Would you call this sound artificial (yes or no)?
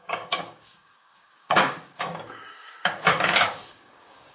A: yes